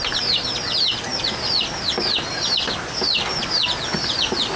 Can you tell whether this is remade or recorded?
recorded